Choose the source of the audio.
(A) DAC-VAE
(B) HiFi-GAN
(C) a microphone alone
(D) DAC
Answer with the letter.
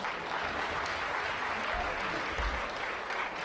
C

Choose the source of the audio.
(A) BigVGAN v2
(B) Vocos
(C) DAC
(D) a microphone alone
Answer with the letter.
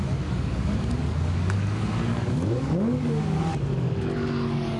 C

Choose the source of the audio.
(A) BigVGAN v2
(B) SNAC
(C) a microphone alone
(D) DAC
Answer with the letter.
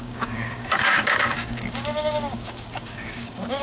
D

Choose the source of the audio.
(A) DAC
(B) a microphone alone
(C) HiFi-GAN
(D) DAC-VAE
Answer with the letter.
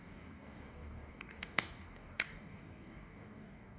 A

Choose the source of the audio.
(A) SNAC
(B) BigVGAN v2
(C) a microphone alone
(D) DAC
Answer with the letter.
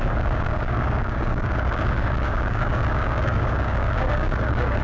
D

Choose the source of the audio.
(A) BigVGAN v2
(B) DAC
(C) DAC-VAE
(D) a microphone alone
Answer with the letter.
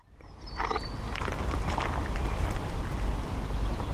D